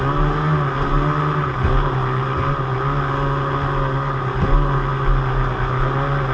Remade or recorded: recorded